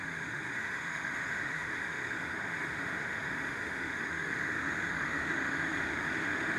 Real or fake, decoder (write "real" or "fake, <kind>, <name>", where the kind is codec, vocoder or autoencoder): fake, autoencoder, DAC-VAE